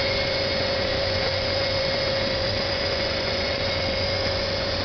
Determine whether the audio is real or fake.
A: fake